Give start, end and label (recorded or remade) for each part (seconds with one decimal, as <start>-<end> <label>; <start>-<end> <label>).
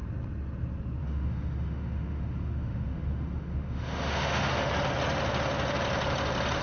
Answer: 0.0-1.0 recorded; 1.0-4.7 remade; 4.7-6.6 recorded